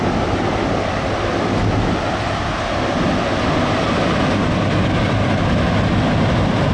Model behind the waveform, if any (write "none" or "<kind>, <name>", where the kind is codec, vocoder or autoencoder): none